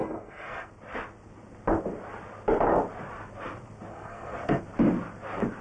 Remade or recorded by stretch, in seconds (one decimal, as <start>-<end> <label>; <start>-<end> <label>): 0.0-0.7 remade; 0.7-3.9 recorded; 3.9-4.6 remade; 4.6-5.6 recorded